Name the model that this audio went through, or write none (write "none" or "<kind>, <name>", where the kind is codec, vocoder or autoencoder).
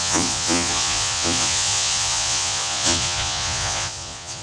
vocoder, Vocos